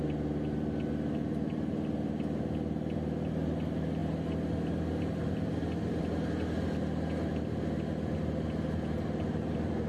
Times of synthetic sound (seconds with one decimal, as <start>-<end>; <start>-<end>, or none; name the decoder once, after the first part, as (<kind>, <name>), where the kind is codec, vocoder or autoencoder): none